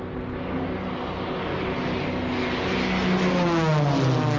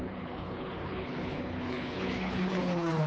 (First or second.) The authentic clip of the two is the first